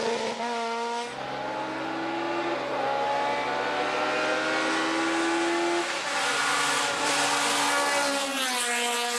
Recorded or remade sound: recorded